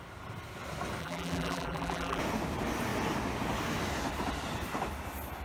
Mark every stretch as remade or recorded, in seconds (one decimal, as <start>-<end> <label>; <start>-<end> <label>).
0.0-1.0 recorded; 1.0-2.2 remade; 2.2-5.4 recorded